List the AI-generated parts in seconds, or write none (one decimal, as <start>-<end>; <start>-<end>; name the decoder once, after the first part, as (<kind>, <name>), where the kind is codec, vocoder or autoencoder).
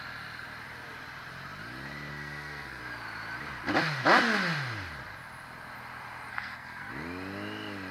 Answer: 2.1-2.8 (codec, SNAC); 6.3-6.9